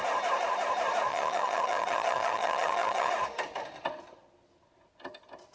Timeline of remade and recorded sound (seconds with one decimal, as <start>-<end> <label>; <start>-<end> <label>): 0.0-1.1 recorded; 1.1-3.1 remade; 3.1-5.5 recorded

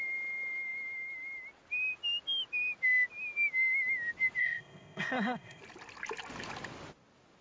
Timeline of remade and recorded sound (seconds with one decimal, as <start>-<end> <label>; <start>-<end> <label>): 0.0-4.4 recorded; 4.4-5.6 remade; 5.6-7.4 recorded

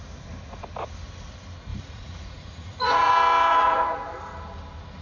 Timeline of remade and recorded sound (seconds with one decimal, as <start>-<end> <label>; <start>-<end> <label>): 0.0-1.7 recorded; 1.7-3.1 remade; 3.1-3.5 recorded; 3.5-4.2 remade; 4.2-5.0 recorded